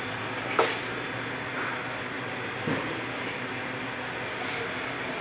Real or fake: real